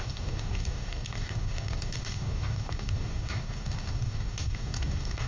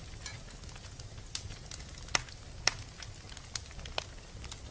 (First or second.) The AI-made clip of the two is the first